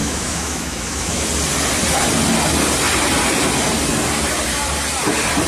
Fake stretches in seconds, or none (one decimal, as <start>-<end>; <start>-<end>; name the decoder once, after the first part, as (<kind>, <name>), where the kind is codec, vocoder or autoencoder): 0.0-1.3 (autoencoder, DAC-VAE)